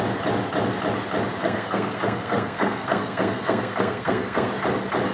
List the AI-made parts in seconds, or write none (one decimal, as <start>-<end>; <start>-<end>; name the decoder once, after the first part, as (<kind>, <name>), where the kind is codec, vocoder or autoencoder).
1.4-4.5 (codec, SNAC)